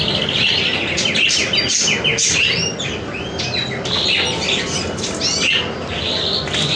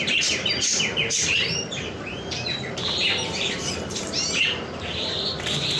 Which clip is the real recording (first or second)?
first